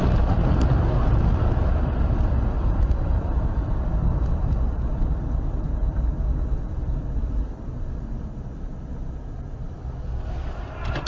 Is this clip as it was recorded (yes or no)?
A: no